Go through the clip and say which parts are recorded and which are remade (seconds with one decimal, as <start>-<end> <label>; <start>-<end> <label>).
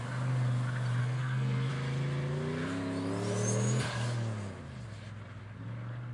0.0-1.0 recorded; 1.0-1.7 remade; 1.7-6.1 recorded